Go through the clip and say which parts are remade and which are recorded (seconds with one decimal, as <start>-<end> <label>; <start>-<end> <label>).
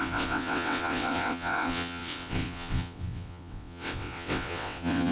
0.0-5.1 remade